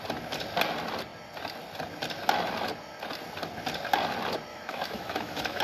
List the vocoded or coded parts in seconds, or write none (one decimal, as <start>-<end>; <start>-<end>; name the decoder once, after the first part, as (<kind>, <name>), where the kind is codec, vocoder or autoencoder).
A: 4.5-5.6 (autoencoder, DAC-VAE)